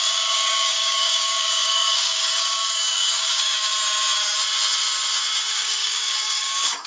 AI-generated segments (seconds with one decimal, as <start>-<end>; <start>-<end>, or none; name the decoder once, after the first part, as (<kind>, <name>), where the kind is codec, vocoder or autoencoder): 0.0-3.7 (codec, DAC); 5.5-6.9